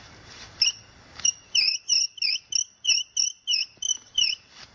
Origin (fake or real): real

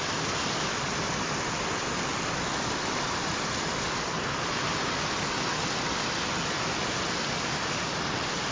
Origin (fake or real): real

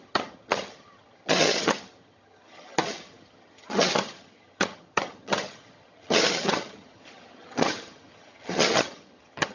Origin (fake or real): fake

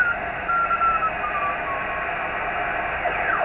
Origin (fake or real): real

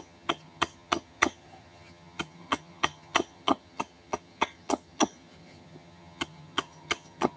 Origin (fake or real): fake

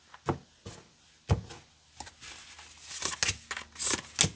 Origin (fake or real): real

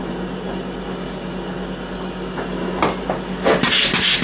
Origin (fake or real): real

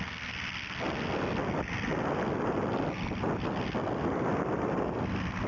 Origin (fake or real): real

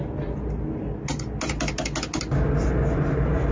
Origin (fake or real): real